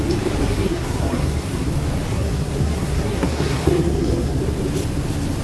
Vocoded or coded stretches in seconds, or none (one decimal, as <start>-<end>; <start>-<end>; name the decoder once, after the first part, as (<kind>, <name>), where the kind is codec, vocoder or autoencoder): 0.4-1.7 (codec, SNAC); 2.1-4.4